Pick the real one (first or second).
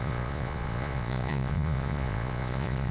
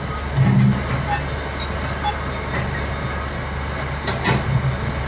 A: second